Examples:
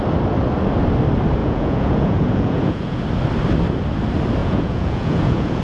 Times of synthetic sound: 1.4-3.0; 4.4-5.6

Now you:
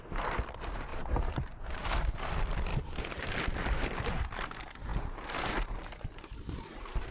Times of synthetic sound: 0.9-1.8; 2.7-4.0; 4.9-5.5

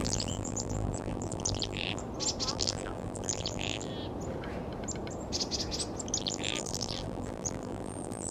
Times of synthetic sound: 0.0-2.0; 2.5-3.9; 6.2-8.3